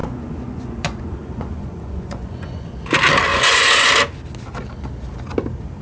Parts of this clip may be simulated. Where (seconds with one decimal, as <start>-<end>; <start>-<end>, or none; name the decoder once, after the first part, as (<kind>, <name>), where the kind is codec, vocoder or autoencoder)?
0.0-2.7 (vocoder, Vocos); 3.3-3.9